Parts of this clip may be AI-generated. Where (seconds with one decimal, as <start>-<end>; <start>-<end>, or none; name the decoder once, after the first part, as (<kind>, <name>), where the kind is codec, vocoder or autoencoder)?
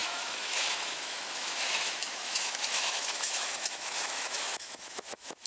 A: 0.0-5.5 (autoencoder, DAC-VAE)